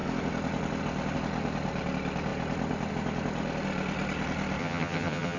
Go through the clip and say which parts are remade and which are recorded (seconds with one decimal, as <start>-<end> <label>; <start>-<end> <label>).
0.0-4.6 recorded; 4.6-5.4 remade